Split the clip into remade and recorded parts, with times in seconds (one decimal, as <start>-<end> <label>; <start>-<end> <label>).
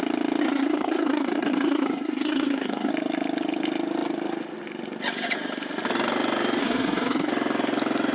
0.0-0.4 recorded; 0.4-2.9 remade; 2.9-6.6 recorded; 6.6-7.3 remade; 7.3-8.1 recorded